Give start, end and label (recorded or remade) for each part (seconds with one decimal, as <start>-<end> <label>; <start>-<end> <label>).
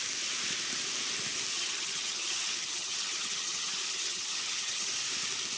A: 0.0-1.5 recorded; 1.5-4.9 remade; 4.9-5.6 recorded